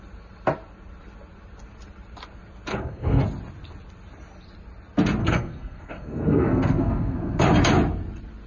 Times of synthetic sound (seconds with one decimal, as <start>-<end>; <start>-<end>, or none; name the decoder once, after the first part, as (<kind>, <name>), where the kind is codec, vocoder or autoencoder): 2.7-3.2 (codec, SNAC); 5.2-7.4